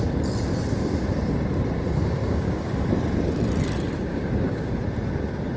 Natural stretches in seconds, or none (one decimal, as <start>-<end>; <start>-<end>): 0.0-2.2; 2.9-4.1; 4.7-5.6